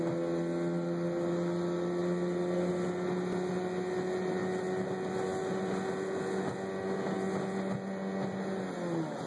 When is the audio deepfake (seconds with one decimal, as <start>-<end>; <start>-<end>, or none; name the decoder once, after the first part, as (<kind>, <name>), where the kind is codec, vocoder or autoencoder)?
none